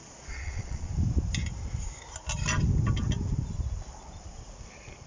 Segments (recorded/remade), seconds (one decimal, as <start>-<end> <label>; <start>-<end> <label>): 0.0-0.9 remade; 0.9-5.1 recorded